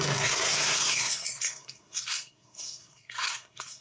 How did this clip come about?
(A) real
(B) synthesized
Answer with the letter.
B